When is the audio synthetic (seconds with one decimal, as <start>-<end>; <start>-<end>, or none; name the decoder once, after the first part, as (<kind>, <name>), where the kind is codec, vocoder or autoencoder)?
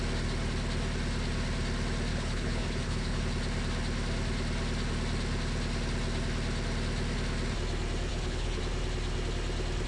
2.1-3.2 (codec, HILCodec); 8.1-8.6